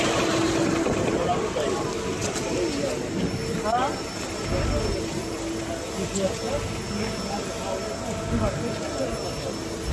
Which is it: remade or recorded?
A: recorded